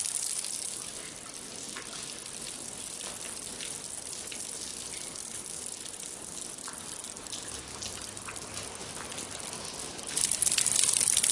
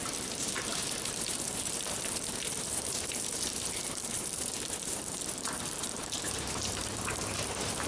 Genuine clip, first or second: first